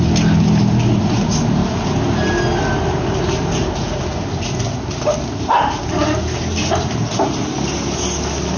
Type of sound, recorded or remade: recorded